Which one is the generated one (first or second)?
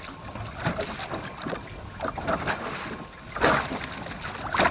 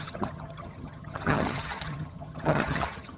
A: second